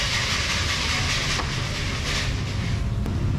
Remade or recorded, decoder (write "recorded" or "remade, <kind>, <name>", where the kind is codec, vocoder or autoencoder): recorded